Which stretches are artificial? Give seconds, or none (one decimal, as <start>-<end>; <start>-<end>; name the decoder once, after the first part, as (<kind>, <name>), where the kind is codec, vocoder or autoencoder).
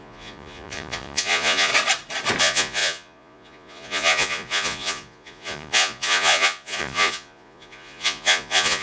0.0-1.7 (vocoder, Vocos); 2.4-8.8